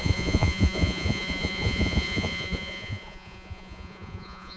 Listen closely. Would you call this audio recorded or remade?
remade